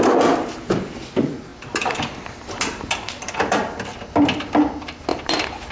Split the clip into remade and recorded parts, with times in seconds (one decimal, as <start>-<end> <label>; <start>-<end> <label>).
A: 0.0-5.7 remade